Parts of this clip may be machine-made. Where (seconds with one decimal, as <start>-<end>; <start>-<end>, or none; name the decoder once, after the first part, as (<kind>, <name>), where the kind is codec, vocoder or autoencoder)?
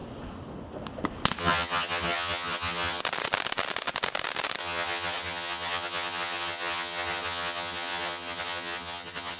1.4-3.0 (vocoder, HiFi-GAN); 4.6-9.4